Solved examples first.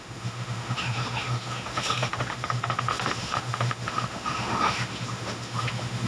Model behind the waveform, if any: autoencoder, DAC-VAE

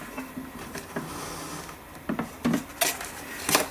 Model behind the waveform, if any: none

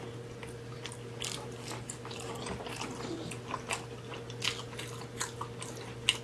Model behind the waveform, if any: none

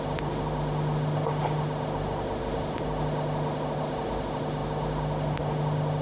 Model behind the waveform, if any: autoencoder, DAC-VAE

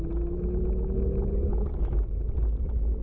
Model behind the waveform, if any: none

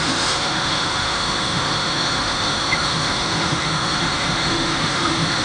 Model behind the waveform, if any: autoencoder, DAC-VAE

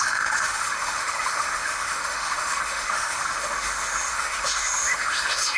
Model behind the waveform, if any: autoencoder, DAC-VAE